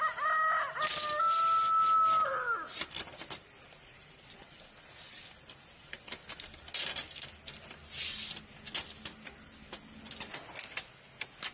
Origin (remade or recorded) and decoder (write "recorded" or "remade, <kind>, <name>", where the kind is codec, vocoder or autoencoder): recorded